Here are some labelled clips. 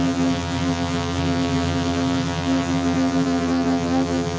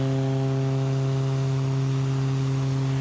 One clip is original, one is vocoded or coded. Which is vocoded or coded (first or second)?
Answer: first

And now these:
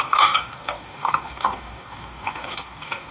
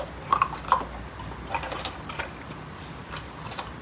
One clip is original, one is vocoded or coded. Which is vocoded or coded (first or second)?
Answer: first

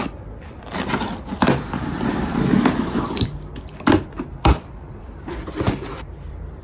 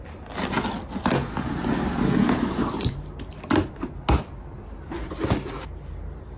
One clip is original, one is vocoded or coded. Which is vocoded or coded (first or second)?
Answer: first